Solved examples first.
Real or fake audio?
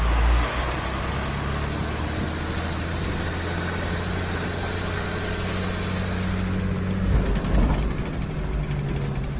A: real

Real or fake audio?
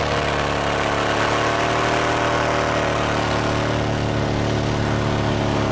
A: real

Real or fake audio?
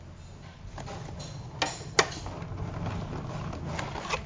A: real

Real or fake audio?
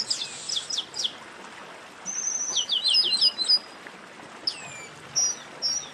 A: real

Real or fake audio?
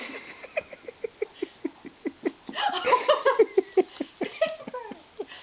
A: real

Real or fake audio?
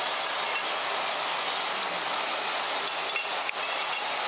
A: real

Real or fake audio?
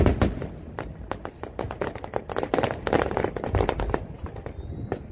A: real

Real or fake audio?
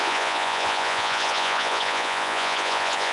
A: fake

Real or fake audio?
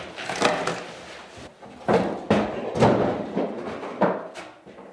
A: real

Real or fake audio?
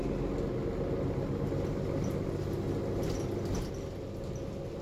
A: real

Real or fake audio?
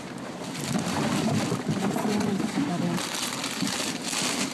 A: real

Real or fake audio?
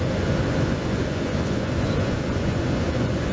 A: fake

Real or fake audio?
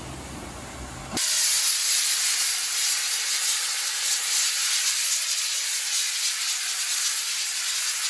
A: real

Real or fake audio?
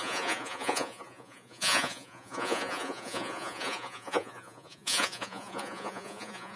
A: fake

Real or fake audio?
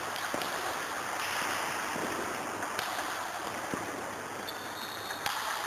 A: real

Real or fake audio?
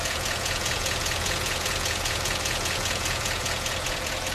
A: fake